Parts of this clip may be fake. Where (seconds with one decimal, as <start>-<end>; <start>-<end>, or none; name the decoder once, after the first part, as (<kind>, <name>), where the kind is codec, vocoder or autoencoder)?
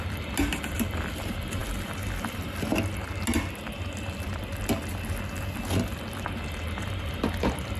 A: none